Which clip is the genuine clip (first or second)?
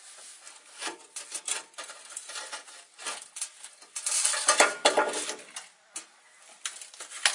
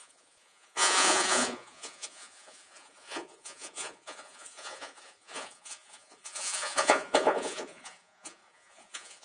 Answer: first